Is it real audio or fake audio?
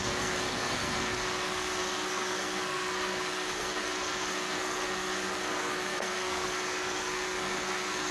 fake